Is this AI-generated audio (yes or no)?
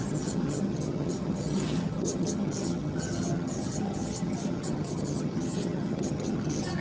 yes